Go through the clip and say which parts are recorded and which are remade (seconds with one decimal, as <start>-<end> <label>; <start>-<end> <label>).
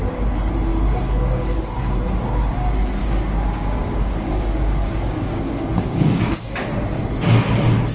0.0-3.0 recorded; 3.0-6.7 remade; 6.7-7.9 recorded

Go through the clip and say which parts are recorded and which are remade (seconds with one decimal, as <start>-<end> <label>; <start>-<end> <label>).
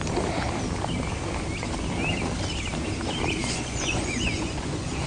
0.0-3.4 recorded; 3.4-5.1 remade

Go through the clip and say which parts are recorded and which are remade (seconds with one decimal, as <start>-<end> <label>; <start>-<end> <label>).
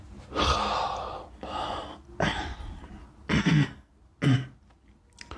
0.0-3.4 recorded; 3.4-3.9 remade; 3.9-5.4 recorded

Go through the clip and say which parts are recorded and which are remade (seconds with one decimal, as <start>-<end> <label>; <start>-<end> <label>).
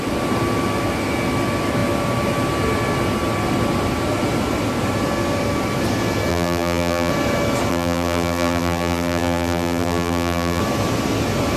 0.0-6.3 recorded; 6.3-7.1 remade; 7.1-7.7 recorded; 7.7-10.6 remade; 10.6-11.6 recorded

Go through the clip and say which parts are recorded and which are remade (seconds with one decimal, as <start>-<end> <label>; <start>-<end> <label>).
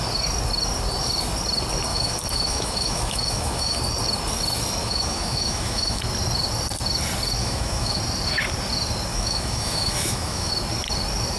0.0-1.9 recorded; 1.9-3.8 remade; 3.8-4.8 recorded; 4.8-6.0 remade; 6.0-7.4 recorded; 7.4-8.0 remade; 8.0-9.1 recorded; 9.1-10.5 remade; 10.5-11.4 recorded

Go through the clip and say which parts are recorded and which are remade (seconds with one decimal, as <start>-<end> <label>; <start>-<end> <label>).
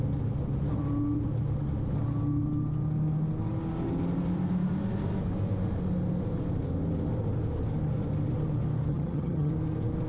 0.0-8.9 recorded; 8.9-9.5 remade; 9.5-10.1 recorded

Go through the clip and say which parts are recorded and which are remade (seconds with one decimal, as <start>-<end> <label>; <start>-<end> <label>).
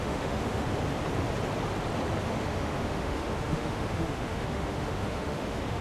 0.0-0.7 remade; 0.7-2.2 recorded; 2.2-5.8 remade